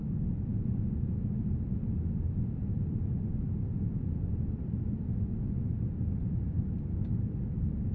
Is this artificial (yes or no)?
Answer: no